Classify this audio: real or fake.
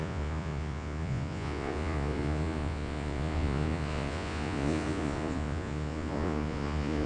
fake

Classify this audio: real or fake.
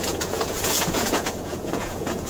fake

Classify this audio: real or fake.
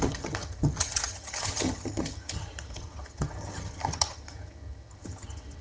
fake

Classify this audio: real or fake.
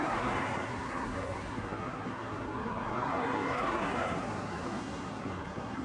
fake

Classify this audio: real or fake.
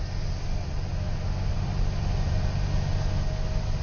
real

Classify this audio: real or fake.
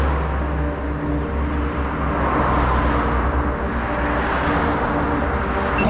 real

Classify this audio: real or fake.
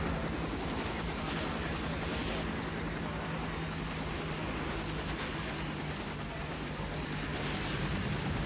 real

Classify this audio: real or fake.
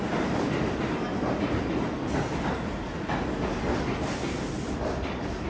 real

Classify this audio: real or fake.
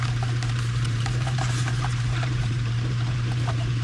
fake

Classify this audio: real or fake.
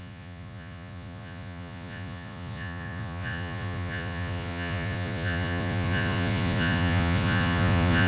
fake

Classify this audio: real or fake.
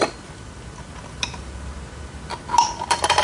real